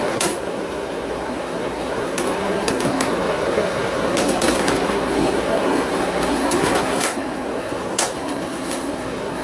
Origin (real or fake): fake